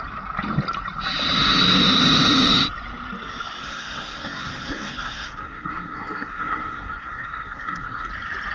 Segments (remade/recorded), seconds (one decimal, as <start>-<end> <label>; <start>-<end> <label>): 0.0-3.6 recorded; 3.6-8.1 remade; 8.1-8.5 recorded